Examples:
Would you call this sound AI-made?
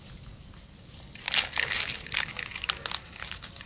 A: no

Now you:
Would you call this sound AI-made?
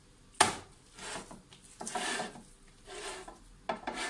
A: no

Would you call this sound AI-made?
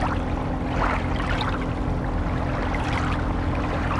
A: no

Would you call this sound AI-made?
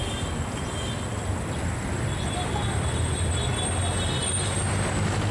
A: no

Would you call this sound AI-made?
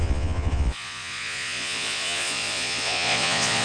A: yes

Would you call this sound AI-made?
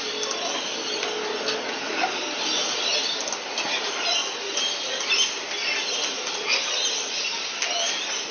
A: no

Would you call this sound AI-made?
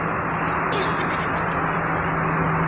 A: no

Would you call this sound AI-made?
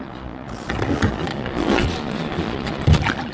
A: yes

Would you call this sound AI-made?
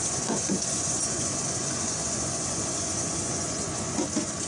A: yes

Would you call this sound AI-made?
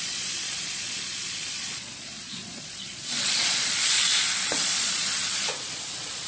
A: yes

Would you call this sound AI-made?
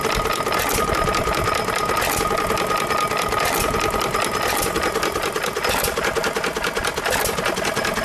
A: no